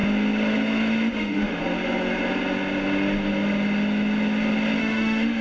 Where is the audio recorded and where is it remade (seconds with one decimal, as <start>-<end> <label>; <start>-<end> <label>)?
0.0-1.1 recorded; 1.1-1.6 remade; 1.6-4.8 recorded; 4.8-5.4 remade